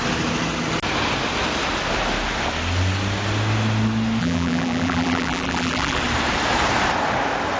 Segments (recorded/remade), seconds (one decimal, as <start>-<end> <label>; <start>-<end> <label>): 0.0-4.2 recorded; 4.2-6.0 remade; 6.0-7.6 recorded